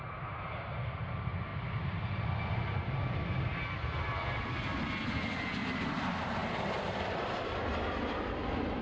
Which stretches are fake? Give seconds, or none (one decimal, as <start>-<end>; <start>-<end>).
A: none